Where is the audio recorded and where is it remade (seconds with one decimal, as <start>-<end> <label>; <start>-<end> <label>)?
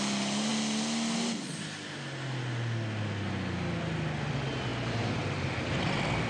0.0-6.3 recorded